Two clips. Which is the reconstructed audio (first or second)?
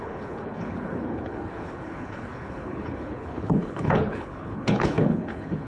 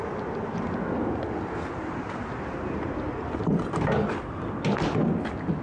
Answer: first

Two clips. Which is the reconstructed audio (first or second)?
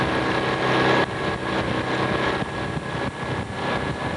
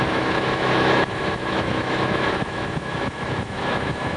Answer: second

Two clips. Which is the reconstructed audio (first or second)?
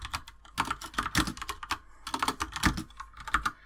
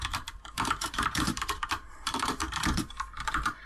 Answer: second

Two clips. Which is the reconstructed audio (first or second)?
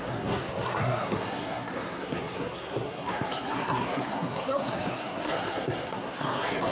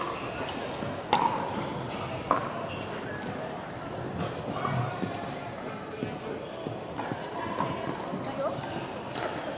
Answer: first